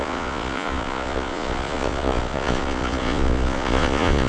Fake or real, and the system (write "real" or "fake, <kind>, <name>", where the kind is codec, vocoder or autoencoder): fake, vocoder, Vocos